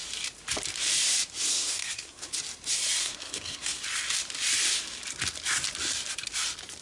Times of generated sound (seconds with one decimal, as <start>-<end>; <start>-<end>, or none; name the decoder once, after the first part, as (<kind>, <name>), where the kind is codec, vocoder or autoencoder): 1.5-2.3 (codec, SNAC); 3.0-3.8